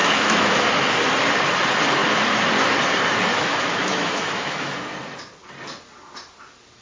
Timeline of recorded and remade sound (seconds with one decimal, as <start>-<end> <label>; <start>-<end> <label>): 0.0-0.6 remade; 0.6-3.3 recorded; 3.3-4.7 remade; 4.7-6.8 recorded